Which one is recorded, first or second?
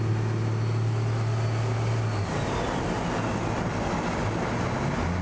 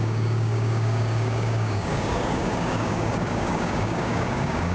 first